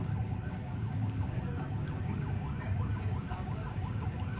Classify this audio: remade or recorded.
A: remade